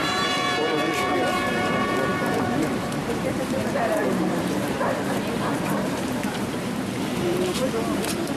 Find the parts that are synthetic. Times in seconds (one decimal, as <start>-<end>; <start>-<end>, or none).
0.0-8.4